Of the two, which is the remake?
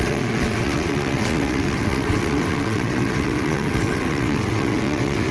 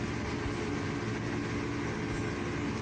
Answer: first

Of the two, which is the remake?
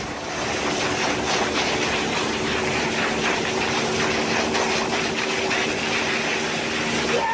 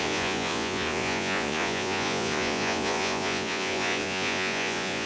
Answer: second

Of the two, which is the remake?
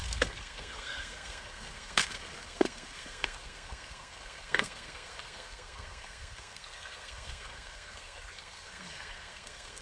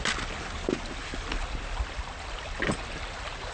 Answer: first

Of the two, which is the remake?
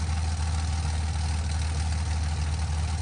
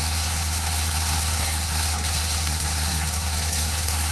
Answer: second